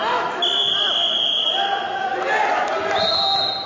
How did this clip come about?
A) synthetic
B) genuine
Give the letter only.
B